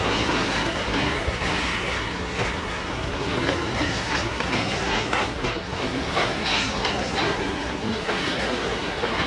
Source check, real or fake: fake